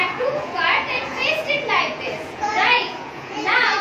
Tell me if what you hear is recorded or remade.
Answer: remade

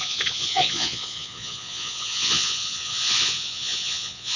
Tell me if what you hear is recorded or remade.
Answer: remade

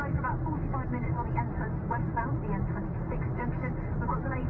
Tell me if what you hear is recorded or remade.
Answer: recorded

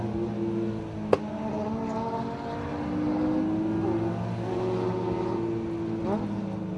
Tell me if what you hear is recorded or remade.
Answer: recorded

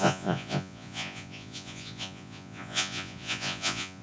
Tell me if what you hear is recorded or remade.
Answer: remade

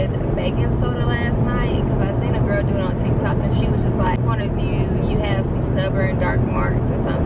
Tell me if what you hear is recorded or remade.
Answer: recorded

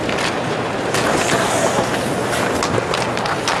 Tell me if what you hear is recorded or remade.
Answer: recorded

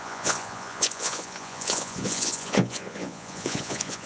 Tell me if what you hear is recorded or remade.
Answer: remade